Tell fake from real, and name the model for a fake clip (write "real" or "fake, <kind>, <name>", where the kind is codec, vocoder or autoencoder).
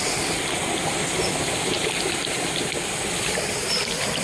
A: real